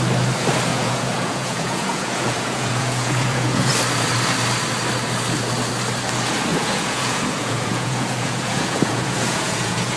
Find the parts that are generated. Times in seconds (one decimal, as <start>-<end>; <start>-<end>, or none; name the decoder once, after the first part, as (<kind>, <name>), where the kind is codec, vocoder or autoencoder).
0.7-3.7 (vocoder, Vocos); 6.5-10.0